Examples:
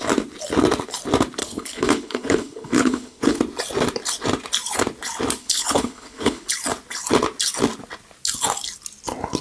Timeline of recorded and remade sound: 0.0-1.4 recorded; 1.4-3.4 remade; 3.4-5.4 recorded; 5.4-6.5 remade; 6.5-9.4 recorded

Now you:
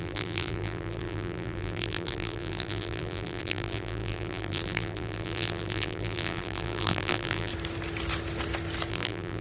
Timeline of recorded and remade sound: 0.0-7.5 remade; 7.5-8.9 recorded; 8.9-9.4 remade